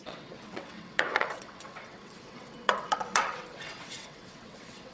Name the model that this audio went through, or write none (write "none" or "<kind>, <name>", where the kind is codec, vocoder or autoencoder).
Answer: vocoder, WaveNeXt